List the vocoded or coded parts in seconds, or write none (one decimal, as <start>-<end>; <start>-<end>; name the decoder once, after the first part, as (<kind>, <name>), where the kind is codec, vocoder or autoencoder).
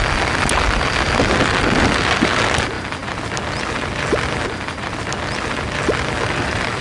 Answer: none